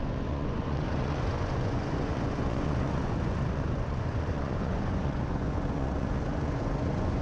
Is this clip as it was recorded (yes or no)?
no